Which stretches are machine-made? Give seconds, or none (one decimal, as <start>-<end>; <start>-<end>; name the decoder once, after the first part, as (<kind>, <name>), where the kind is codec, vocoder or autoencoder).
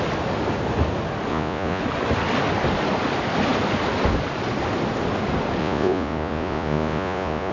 1.3-1.8 (vocoder, Vocos); 5.6-7.5